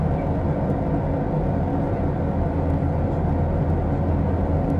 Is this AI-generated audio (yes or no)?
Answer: no